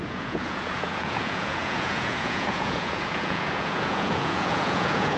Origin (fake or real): fake